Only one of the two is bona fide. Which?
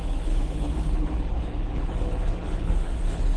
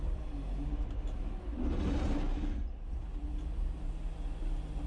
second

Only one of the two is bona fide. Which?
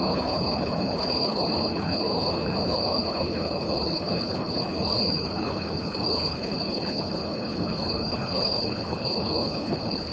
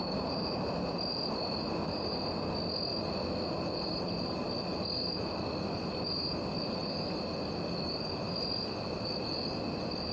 second